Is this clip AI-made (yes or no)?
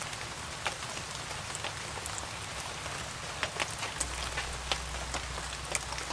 no